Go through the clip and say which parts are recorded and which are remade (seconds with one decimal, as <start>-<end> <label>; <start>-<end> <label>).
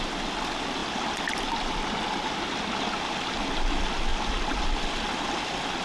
0.0-5.8 recorded